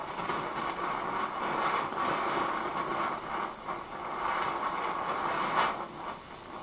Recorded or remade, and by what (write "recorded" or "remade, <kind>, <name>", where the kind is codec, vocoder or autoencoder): recorded